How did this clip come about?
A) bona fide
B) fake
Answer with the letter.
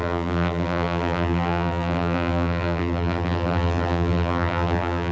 B